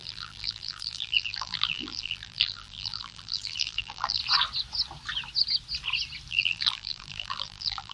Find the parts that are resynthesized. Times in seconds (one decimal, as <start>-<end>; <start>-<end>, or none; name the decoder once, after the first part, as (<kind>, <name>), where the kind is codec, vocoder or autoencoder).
0.0-4.2 (vocoder, BigVGAN v2); 6.3-7.9